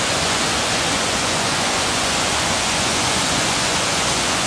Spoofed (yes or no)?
yes